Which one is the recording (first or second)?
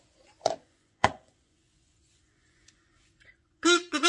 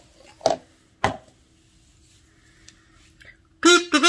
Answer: second